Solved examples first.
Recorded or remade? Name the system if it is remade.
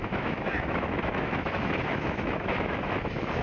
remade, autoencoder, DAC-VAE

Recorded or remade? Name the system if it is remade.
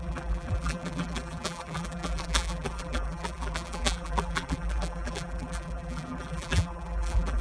remade, vocoder, BigVGAN v2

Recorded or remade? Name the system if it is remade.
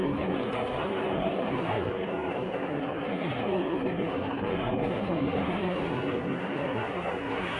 remade, codec, SNAC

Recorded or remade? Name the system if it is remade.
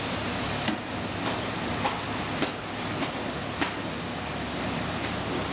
recorded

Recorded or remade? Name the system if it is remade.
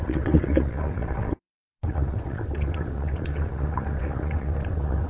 remade, vocoder, WaveNeXt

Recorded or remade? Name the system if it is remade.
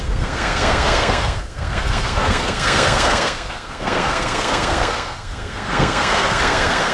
remade, codec, SNAC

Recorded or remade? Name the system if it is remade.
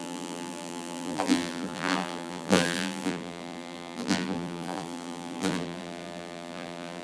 remade, vocoder, BigVGAN v2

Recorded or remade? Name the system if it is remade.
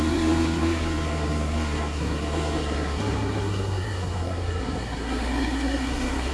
remade, codec, SNAC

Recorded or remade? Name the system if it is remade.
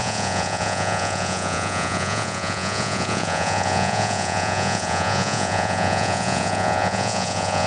remade, vocoder, Vocos